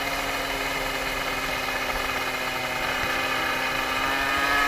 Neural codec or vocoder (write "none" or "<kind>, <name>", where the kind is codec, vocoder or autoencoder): none